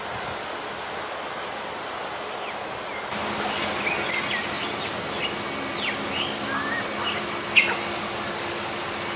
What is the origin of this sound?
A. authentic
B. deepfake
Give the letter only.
A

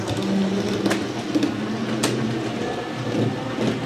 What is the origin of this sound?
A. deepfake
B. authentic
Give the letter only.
B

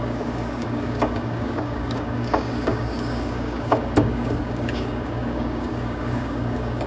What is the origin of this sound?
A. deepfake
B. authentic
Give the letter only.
A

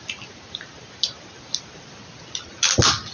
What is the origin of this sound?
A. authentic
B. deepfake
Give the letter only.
A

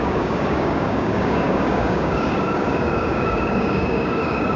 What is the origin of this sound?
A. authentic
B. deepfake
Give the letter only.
B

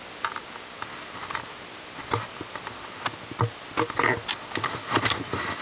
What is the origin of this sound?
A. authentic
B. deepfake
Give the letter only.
A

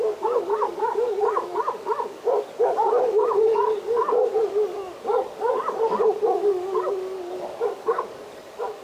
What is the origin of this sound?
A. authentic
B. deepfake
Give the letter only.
B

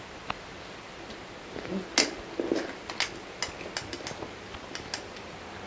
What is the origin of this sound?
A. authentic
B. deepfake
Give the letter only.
A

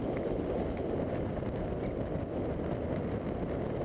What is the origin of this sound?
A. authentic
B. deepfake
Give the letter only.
A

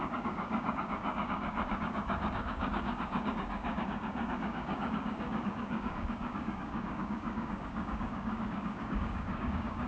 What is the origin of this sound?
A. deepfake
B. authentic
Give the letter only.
A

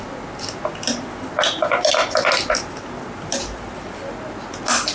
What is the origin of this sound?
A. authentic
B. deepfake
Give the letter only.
A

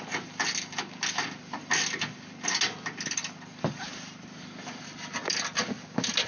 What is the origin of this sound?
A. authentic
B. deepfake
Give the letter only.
A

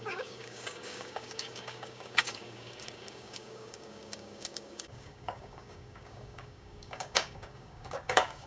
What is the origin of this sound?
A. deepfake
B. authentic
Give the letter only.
A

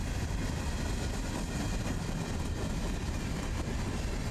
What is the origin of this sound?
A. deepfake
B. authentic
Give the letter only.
B